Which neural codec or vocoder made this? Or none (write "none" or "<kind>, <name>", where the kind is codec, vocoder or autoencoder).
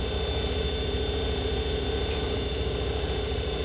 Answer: none